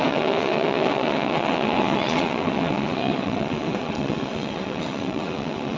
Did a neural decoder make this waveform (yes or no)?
yes